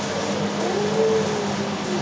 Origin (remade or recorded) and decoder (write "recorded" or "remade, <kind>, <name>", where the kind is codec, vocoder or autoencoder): recorded